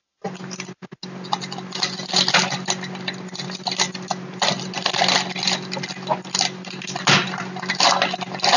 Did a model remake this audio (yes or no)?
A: no